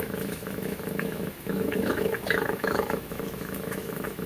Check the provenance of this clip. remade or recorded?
remade